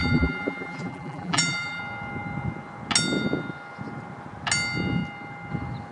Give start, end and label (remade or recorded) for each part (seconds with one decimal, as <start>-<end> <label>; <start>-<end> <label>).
0.0-1.8 remade; 1.8-5.9 recorded